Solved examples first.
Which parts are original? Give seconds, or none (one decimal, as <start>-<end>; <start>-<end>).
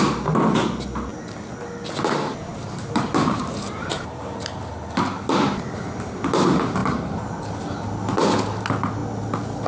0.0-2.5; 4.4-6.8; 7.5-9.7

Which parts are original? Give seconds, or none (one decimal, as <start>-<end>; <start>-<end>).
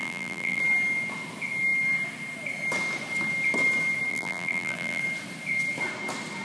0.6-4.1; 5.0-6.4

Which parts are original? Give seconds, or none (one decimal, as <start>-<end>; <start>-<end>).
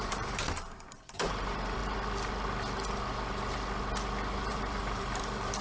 1.8-4.3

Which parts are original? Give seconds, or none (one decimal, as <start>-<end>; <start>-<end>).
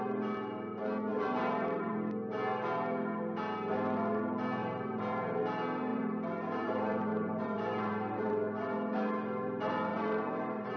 0.0-1.1; 1.9-4.6; 5.4-5.9; 8.3-9.9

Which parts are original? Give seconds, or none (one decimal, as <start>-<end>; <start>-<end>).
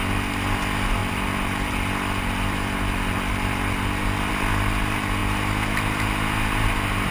0.0-1.0; 4.3-7.1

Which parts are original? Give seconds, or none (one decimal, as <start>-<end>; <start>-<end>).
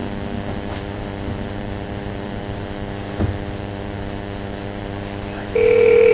0.0-0.7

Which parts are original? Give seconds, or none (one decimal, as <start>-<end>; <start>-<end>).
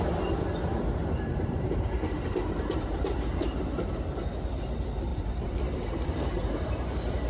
0.0-0.7; 3.0-5.1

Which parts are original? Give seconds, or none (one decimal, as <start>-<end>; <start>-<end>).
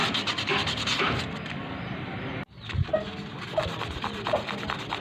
0.0-5.0